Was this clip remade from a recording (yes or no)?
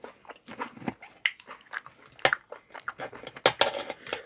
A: no